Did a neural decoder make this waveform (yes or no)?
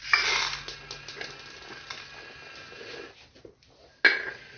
no